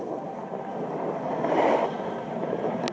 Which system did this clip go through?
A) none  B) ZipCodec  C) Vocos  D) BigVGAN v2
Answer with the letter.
A